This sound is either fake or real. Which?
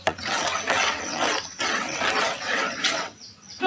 fake